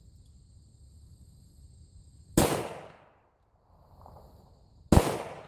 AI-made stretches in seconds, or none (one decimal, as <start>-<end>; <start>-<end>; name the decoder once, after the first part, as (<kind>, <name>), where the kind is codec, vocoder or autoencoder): none